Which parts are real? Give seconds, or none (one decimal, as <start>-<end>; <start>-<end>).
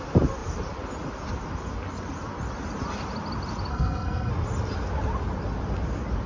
0.0-3.7; 4.3-6.3